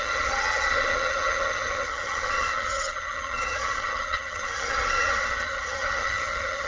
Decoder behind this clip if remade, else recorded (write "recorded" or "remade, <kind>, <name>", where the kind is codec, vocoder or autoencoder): remade, vocoder, HiFi-GAN